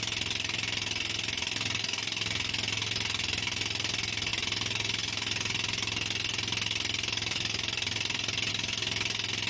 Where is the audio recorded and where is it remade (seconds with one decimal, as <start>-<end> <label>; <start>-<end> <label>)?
0.0-9.5 recorded